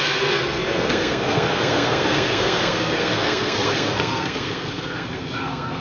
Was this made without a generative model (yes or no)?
no